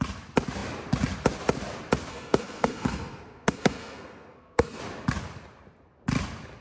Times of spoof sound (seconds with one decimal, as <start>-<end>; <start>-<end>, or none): 2.1-4.8